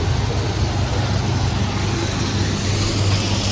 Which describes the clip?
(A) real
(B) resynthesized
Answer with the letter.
A